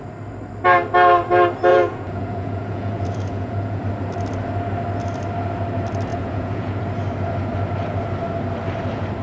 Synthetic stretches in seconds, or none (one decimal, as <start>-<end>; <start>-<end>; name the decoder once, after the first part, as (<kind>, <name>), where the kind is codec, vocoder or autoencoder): 1.7-3.8 (vocoder, Vocos); 6.1-6.8

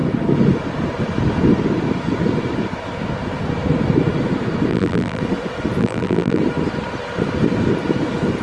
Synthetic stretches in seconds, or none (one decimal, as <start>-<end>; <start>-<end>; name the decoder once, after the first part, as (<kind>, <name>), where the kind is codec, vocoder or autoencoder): 4.7-5.2 (vocoder, BigVGAN v2); 5.8-6.4